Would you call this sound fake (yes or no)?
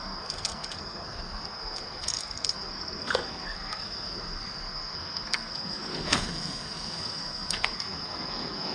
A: yes